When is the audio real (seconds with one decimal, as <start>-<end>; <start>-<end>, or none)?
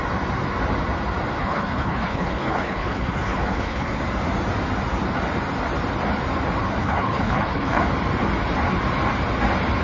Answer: 0.0-1.4; 4.0-6.8; 7.8-9.8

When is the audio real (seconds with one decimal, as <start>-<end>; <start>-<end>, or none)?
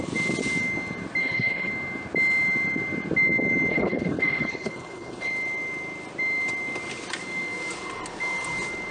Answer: 0.0-1.2; 1.7-3.7; 5.3-8.9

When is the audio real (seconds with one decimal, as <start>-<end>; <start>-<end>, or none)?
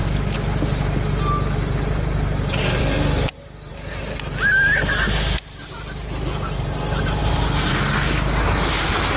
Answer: 0.0-9.2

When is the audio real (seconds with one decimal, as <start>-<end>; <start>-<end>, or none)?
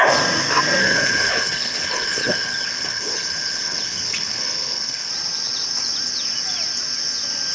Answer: 0.0-0.8; 5.1-7.5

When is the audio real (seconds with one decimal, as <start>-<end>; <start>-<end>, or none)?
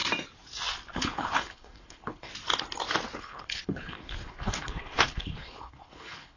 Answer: 0.0-0.9; 2.3-3.2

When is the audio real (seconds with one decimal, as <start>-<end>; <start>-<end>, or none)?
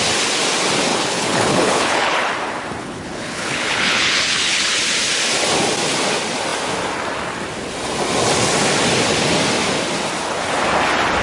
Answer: 0.0-0.9; 2.3-2.8; 4.7-11.2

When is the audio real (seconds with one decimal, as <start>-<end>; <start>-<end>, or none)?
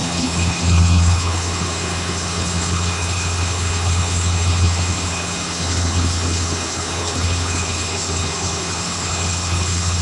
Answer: none